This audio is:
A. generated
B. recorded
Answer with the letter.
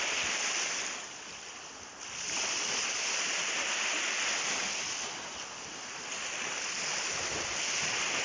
B